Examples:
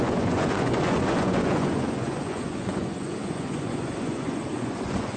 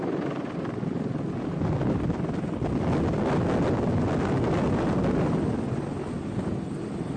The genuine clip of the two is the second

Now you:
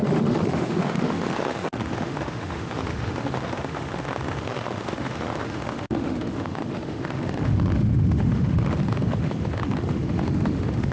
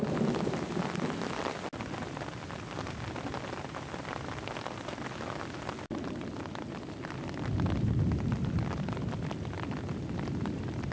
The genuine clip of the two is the second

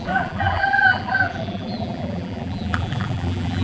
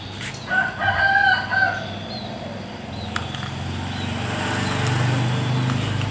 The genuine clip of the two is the second